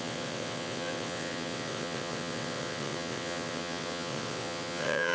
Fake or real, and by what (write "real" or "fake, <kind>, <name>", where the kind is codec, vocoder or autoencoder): fake, vocoder, WaveNeXt